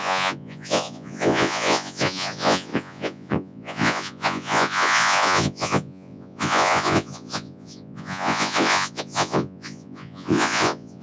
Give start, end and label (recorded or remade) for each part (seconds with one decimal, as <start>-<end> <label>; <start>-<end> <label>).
0.0-11.0 remade